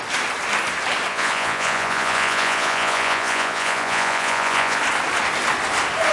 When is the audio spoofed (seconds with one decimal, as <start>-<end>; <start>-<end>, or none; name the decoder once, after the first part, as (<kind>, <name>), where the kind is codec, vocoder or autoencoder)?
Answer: 1.1-4.8 (vocoder, Vocos)